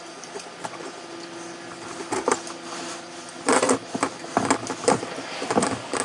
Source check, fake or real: real